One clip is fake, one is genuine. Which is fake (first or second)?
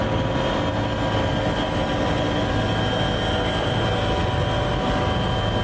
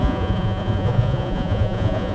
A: second